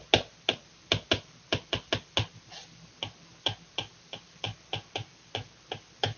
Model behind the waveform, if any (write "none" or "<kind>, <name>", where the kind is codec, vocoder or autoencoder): none